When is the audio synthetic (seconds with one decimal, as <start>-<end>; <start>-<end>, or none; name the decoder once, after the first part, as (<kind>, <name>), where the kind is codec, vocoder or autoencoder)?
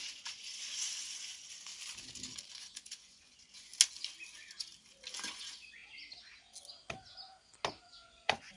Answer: 0.0-1.7 (vocoder, Vocos); 2.5-3.7; 5.1-5.8; 7.8-8.6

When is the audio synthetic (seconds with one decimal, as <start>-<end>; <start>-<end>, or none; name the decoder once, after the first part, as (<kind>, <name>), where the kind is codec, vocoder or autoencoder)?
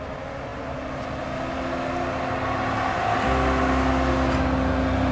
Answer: none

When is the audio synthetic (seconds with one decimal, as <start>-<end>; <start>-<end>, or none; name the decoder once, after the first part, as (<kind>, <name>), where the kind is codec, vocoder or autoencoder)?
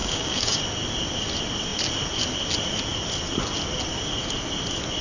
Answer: 0.0-0.6 (codec, DAC)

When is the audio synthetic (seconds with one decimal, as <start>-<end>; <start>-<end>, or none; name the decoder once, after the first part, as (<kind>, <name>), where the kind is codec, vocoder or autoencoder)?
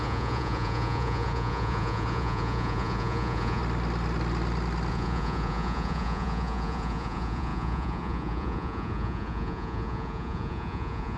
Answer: 0.0-3.6 (vocoder, Vocos); 4.9-11.2